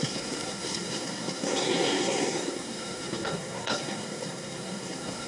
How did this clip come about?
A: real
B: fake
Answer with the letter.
B